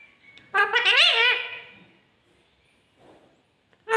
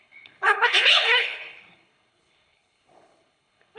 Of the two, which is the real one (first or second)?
first